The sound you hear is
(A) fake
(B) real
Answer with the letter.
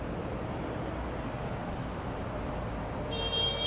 B